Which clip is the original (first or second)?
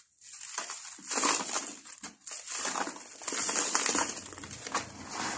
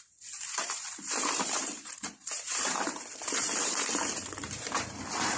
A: first